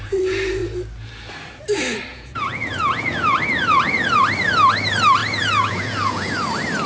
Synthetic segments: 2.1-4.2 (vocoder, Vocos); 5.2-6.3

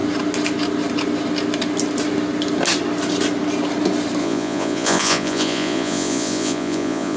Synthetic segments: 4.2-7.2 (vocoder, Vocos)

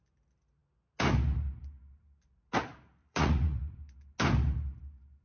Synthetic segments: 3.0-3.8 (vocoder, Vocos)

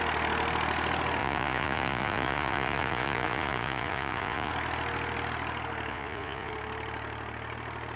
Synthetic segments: 1.2-4.5 (vocoder, Vocos); 5.9-6.5

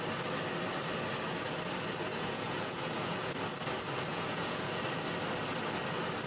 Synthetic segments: 2.1-3.3 (vocoder, Vocos); 4.1-4.7

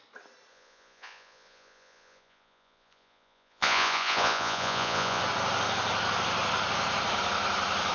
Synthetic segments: 0.5-5.2 (vocoder, Vocos)